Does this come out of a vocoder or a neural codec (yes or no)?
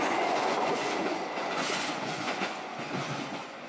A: yes